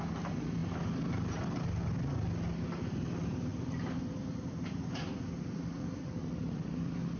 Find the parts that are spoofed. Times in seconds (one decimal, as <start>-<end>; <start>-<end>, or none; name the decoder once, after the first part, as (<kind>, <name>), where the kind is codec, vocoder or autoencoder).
none